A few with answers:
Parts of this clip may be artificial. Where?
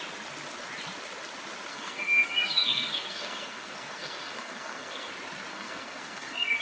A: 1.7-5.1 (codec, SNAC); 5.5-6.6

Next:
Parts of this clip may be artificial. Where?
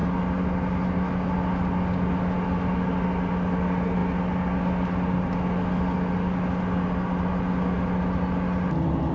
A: none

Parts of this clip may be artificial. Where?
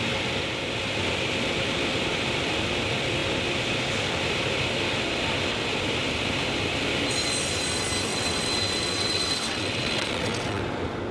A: 8.1-10.6 (vocoder, WaveNeXt)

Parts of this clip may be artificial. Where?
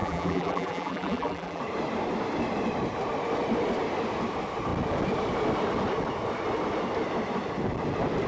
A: 0.0-1.6 (vocoder, BigVGAN v2)